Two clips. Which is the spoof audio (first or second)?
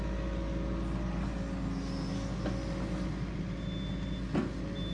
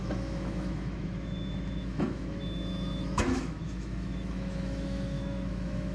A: second